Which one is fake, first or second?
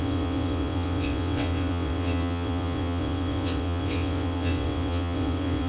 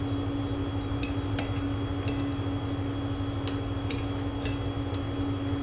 first